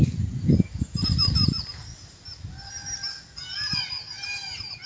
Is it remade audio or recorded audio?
recorded